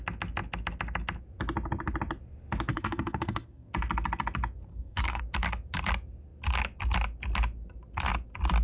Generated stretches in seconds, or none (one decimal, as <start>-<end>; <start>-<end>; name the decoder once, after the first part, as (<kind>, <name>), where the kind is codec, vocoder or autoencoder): 2.7-3.7 (codec, SNAC); 4.7-5.2